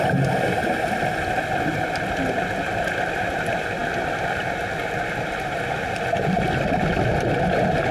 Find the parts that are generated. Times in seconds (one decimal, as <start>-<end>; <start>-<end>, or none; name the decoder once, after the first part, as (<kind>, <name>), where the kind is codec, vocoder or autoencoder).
none